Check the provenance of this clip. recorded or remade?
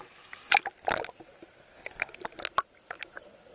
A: recorded